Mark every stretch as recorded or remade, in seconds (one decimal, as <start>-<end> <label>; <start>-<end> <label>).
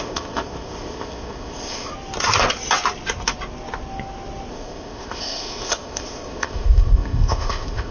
0.0-1.9 remade; 1.9-4.5 recorded; 4.5-7.9 remade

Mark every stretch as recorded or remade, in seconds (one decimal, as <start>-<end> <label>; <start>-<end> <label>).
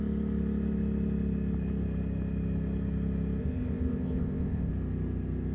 0.0-3.4 recorded; 3.4-4.7 remade; 4.7-5.5 recorded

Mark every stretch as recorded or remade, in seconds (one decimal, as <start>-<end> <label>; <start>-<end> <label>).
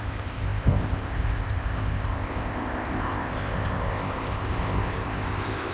0.0-5.7 remade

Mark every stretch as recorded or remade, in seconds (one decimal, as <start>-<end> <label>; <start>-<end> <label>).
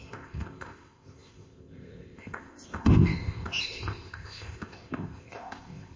0.0-6.0 remade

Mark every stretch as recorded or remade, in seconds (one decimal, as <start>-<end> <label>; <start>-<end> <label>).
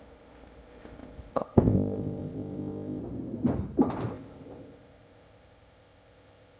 0.0-3.0 remade; 3.0-4.1 recorded; 4.1-6.6 remade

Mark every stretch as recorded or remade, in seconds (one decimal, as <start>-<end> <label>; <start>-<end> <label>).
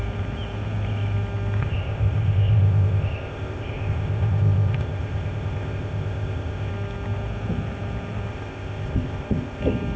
0.0-1.6 recorded; 1.6-6.7 remade; 6.7-8.3 recorded; 8.3-9.6 remade; 9.6-10.0 recorded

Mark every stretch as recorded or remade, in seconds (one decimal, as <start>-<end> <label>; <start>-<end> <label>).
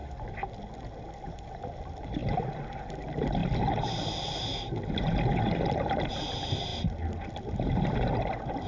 0.0-8.7 recorded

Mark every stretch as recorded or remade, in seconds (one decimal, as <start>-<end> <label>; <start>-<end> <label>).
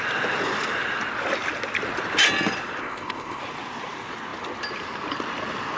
0.0-2.8 recorded; 2.8-3.4 remade; 3.4-5.8 recorded